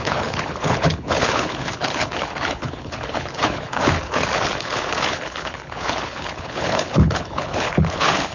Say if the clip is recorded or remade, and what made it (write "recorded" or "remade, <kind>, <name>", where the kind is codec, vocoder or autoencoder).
remade, codec, HILCodec